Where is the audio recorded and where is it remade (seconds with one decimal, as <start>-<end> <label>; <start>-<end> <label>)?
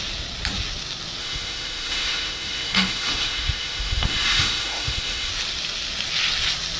0.0-1.2 recorded; 1.2-5.3 remade; 5.3-6.8 recorded